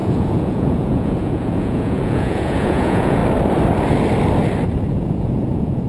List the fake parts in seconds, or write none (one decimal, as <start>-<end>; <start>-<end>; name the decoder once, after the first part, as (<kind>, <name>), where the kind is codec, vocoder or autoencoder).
0.0-3.2 (vocoder, Vocos); 4.9-5.9

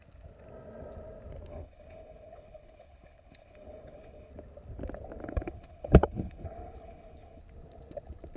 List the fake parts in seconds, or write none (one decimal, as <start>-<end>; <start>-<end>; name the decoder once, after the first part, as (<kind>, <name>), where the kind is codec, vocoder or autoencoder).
1.5-4.3 (codec, HILCodec); 5.2-7.4

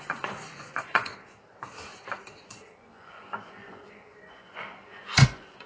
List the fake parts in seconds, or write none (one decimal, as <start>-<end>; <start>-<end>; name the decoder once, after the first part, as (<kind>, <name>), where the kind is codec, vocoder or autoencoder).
0.0-1.1 (vocoder, Vocos); 2.4-5.7

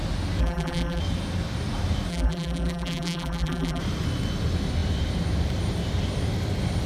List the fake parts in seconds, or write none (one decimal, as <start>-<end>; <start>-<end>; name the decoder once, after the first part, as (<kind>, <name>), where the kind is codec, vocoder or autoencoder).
0.4-1.0 (vocoder, BigVGAN v2); 2.1-3.8

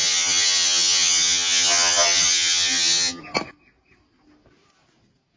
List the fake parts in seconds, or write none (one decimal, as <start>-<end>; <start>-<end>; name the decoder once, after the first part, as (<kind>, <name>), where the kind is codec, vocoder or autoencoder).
0.0-3.2 (vocoder, HiFi-GAN)

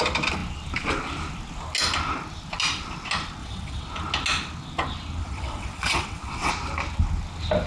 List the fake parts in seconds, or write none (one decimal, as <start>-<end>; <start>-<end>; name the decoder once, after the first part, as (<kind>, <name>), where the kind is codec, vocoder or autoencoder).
3.4-3.9 (vocoder, WaveNeXt); 5.2-6.5